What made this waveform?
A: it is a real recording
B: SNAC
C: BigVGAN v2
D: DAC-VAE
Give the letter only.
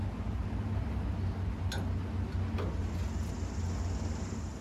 A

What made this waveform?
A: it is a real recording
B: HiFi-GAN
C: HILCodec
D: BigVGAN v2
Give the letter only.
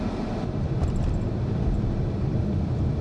D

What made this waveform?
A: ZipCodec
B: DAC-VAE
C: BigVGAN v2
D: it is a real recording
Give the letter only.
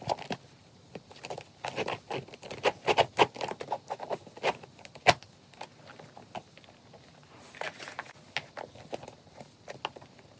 D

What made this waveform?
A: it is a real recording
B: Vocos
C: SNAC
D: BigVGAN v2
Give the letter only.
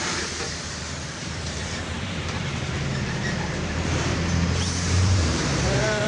D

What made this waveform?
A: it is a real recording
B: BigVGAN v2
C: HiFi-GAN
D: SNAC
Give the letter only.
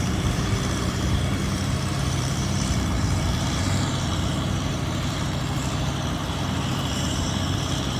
B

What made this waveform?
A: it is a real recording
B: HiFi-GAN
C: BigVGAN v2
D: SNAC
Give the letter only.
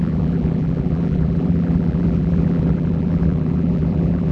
C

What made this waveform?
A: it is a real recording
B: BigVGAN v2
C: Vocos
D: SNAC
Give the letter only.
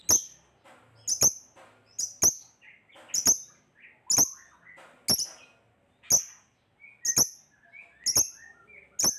A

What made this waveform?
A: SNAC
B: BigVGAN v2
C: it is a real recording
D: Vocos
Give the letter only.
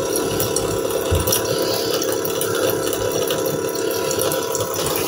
C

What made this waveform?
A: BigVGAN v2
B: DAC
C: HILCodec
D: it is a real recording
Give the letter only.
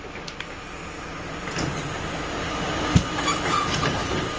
D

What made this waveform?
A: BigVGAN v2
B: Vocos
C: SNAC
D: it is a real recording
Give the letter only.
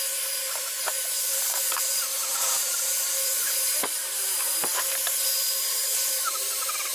A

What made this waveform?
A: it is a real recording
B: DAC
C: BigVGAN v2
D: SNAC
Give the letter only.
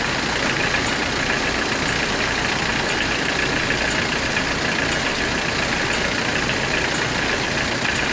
A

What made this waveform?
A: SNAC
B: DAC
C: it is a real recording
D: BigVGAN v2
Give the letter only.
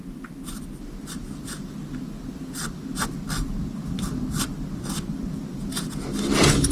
C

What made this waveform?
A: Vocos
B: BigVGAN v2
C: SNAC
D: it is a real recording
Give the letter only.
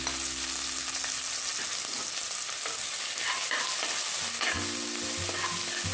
D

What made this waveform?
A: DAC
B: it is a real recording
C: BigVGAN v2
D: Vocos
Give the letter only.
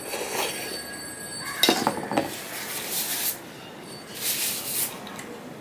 B